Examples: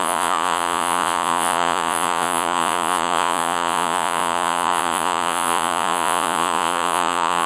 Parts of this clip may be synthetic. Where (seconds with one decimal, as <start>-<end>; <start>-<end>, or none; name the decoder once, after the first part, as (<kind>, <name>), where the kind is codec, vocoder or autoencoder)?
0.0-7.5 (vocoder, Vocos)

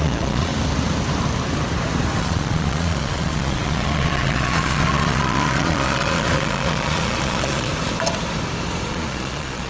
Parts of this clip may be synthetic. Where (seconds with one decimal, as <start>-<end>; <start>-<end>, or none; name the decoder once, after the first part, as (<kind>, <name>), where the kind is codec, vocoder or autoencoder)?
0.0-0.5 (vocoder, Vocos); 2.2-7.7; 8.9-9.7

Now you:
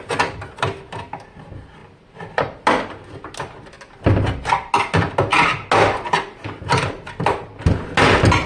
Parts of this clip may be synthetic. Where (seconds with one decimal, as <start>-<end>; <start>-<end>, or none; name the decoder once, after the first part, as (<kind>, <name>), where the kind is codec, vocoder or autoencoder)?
none

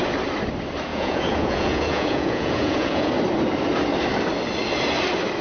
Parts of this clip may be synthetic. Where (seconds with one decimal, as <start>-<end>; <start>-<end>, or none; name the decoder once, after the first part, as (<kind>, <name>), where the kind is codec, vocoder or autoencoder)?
0.9-3.1 (vocoder, Vocos)

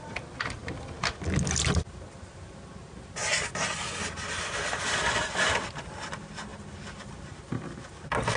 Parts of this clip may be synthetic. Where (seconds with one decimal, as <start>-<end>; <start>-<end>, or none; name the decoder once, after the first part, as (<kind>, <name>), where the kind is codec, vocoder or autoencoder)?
none

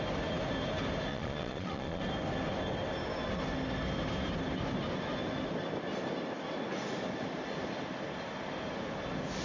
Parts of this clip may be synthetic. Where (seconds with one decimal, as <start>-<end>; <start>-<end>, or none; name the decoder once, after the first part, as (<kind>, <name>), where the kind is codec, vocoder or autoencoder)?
1.1-2.0 (vocoder, Vocos)

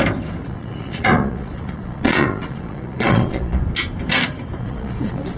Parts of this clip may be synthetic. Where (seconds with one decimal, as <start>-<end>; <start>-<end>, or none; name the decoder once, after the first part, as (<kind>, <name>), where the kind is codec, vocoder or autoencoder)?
0.4-3.6 (vocoder, Vocos); 4.6-5.4